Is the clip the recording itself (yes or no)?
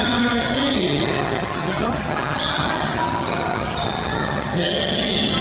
no